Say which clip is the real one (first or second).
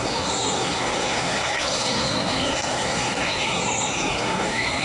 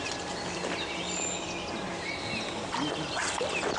second